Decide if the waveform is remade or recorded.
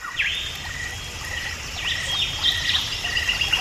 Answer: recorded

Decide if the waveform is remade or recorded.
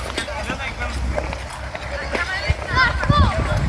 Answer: recorded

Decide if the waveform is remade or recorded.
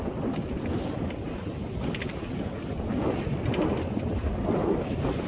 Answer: recorded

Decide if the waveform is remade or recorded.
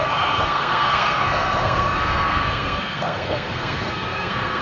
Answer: remade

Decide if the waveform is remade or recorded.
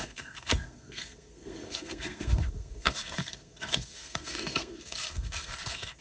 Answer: remade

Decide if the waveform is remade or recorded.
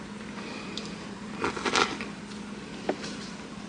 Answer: recorded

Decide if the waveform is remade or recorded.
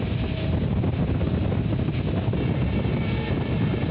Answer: recorded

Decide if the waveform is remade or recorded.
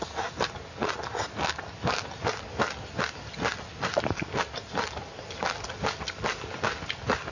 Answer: recorded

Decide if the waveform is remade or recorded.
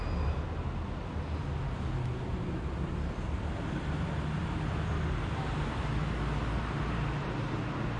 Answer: recorded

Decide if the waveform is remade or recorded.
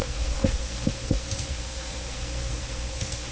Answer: remade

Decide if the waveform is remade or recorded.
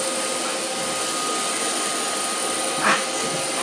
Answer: recorded